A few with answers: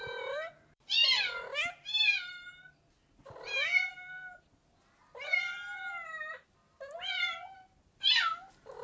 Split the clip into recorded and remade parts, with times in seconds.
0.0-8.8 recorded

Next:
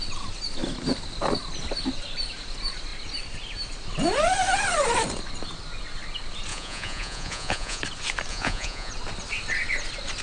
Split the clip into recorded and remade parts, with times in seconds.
0.0-6.5 recorded; 6.5-7.8 remade; 7.8-8.3 recorded; 8.3-8.9 remade; 8.9-10.2 recorded